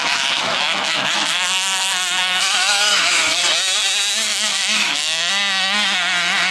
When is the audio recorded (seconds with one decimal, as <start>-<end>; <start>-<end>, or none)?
3.4-4.3; 5.3-6.5